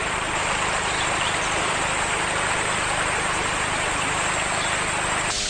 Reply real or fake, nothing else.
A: real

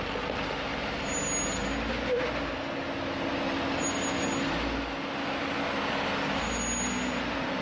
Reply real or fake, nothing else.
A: real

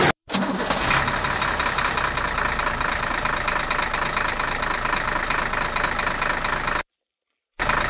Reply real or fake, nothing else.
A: real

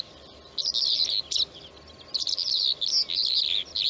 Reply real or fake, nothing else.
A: real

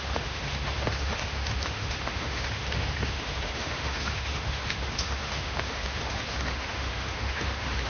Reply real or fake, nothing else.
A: fake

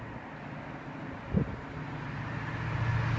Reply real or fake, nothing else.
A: real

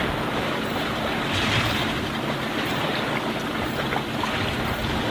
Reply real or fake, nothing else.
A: fake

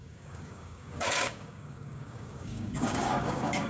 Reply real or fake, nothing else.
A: fake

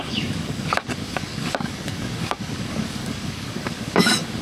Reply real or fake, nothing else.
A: fake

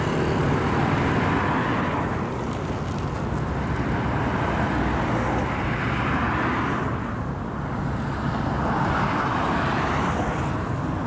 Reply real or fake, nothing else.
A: real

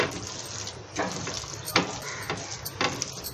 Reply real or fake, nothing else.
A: real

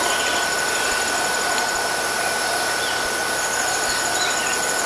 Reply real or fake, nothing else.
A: real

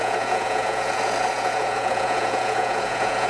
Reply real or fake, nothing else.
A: fake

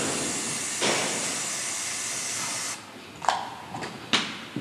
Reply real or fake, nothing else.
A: real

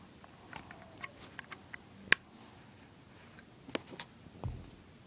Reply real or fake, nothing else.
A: real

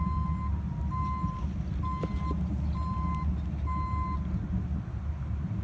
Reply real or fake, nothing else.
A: real